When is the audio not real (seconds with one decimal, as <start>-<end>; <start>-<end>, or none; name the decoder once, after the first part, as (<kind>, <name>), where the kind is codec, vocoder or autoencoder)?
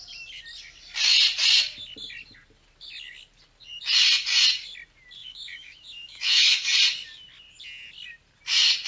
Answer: 5.2-6.6 (autoencoder, DAC-VAE)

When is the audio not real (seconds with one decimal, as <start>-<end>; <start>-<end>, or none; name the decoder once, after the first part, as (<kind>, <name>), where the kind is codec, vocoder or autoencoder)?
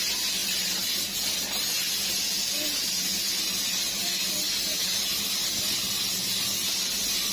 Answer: none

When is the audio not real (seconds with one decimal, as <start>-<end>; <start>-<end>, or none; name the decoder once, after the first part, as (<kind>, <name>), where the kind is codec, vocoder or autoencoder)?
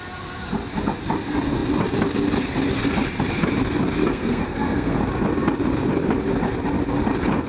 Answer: 4.0-5.0 (codec, SNAC)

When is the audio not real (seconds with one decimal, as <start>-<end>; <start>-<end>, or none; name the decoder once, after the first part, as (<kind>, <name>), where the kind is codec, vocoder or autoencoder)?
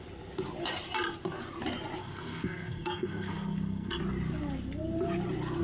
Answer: 2.0-4.0 (codec, SNAC)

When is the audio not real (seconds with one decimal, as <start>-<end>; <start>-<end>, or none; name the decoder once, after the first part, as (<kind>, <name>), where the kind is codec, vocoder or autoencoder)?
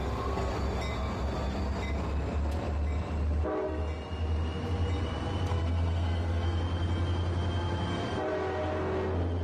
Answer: 0.0-0.5 (codec, SNAC); 5.5-6.6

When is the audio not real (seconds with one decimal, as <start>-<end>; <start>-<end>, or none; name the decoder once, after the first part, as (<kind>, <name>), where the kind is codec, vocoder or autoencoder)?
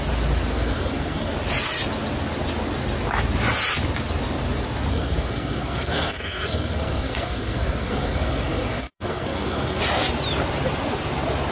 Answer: 0.5-1.3 (codec, SNAC); 4.9-9.8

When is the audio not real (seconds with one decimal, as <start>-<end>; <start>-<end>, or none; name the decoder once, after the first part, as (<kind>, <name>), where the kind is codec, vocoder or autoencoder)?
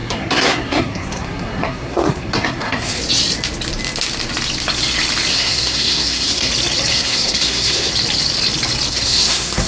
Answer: 0.0-3.0 (codec, SNAC); 5.3-6.5; 6.9-7.9; 8.9-9.7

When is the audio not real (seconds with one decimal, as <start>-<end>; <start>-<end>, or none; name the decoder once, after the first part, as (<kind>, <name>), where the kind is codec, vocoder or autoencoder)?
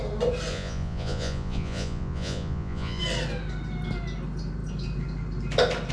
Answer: 0.5-3.0 (vocoder, Vocos)